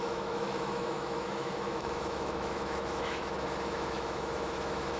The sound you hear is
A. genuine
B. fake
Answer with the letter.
B